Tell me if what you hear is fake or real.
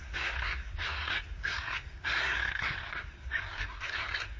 fake